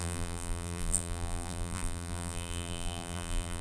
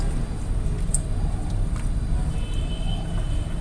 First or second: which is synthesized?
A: first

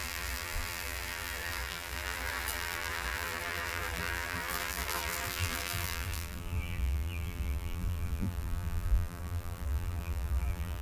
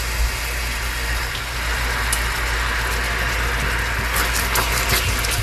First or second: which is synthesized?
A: first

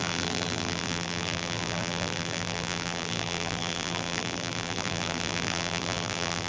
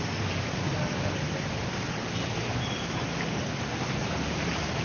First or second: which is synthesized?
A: first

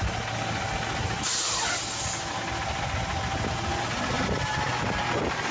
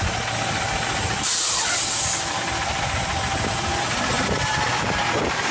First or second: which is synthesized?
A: second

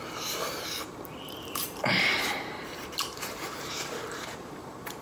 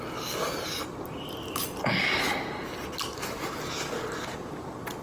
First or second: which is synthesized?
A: first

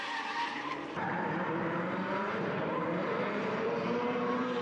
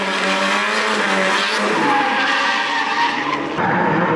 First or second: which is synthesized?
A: first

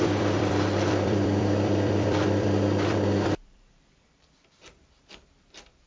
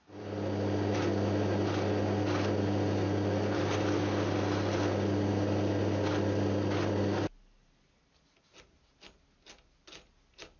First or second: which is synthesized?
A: first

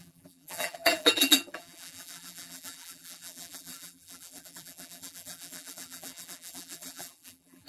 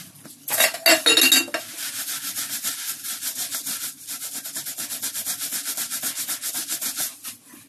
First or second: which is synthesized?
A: first